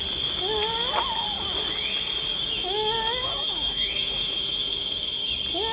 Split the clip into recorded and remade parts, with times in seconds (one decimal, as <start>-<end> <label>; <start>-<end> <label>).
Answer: 0.0-2.3 recorded; 2.3-5.3 remade; 5.3-5.7 recorded